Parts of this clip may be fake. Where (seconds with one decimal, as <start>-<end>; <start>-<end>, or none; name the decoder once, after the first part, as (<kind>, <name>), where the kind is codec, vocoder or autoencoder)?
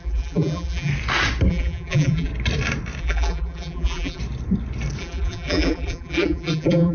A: 0.0-0.9 (vocoder, BigVGAN v2); 1.5-2.3; 3.0-4.2; 5.0-6.9